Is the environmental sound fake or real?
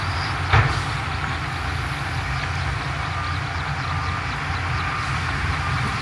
real